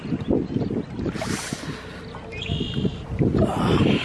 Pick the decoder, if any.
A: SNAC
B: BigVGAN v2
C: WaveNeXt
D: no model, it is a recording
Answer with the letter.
D